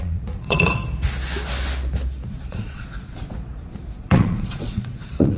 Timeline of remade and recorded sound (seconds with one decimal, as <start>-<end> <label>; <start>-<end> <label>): 0.0-0.8 remade; 0.8-2.5 recorded; 2.5-5.4 remade

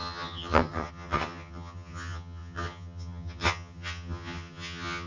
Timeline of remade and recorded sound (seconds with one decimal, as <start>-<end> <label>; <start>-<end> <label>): 0.0-5.1 remade